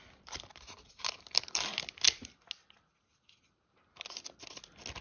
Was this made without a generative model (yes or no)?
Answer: yes